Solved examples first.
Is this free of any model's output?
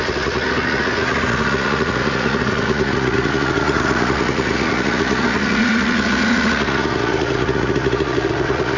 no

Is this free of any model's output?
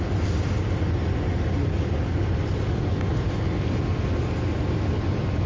yes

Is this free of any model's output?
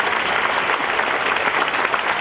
yes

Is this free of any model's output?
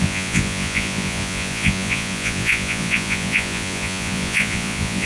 no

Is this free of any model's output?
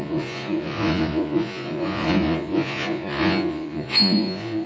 no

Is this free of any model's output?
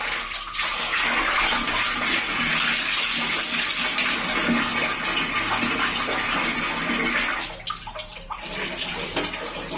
yes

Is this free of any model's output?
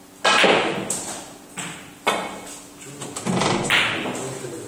yes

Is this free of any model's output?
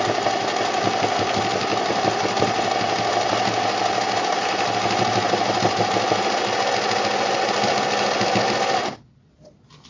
yes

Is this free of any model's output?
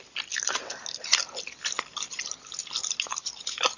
yes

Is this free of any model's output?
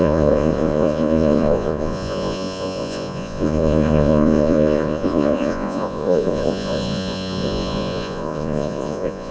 no